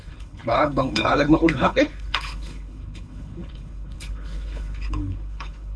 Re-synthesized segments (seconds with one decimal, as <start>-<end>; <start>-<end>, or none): 0.0-5.8

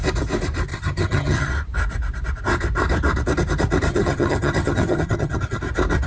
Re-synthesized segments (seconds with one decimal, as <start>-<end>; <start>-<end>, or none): 0.7-1.5; 3.9-5.6

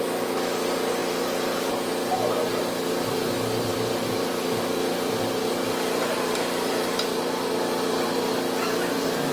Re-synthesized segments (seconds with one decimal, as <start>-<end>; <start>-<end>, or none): 3.7-8.3

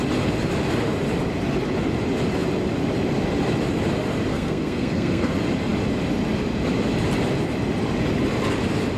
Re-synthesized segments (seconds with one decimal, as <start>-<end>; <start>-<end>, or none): 4.3-5.3